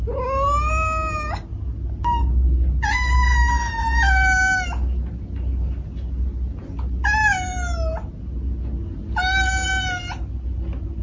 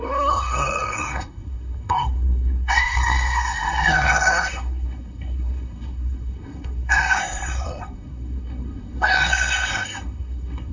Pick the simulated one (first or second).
second